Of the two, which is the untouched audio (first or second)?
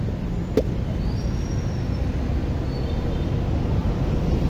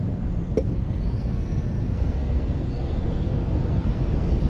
first